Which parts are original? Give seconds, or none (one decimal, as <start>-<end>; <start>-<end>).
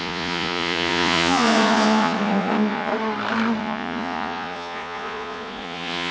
2.9-3.6